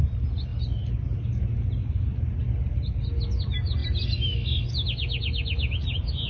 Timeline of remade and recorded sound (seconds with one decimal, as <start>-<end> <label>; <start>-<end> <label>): 0.0-6.3 recorded